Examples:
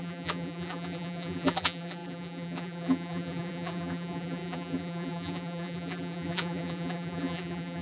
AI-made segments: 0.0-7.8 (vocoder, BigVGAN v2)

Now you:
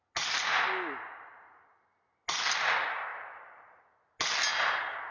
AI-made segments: none